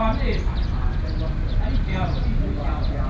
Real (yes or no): yes